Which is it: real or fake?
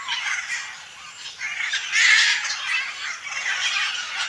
real